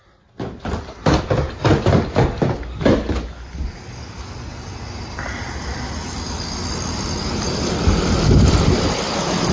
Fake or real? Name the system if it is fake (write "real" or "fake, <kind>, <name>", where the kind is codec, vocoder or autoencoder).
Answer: fake, vocoder, BigVGAN v2